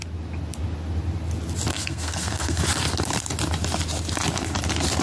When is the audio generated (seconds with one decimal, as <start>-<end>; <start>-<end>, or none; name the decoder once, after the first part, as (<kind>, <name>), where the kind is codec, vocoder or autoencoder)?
1.7-2.6 (codec, SNAC)